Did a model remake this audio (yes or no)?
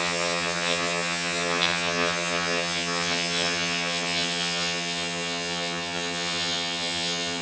yes